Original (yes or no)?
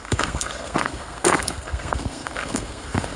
no